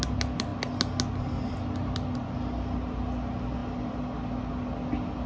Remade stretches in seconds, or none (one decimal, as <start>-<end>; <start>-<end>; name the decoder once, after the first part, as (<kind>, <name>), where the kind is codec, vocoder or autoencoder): none